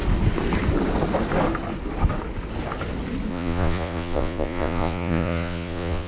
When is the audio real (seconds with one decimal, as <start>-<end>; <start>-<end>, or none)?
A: 0.0-3.3